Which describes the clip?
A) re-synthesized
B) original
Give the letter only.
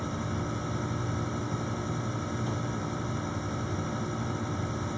B